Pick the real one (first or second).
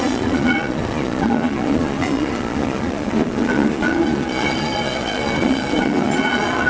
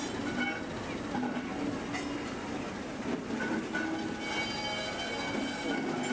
second